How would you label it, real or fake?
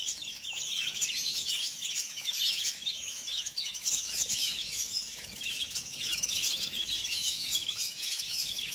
fake